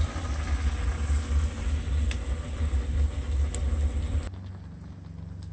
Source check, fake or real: real